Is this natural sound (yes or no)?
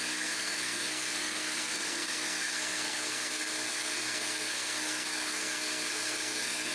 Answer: no